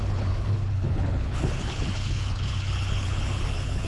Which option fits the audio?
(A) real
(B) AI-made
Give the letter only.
B